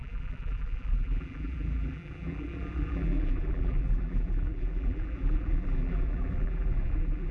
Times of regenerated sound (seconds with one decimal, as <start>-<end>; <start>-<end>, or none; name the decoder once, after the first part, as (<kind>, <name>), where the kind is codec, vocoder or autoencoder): 0.0-7.3 (vocoder, BigVGAN v2)